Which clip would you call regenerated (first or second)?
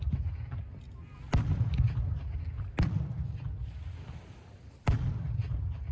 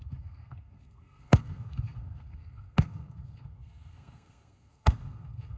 second